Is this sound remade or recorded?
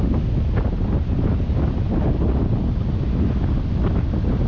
recorded